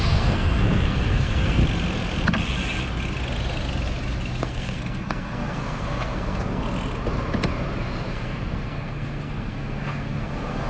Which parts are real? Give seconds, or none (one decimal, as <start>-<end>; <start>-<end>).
1.6-4.4; 6.6-8.1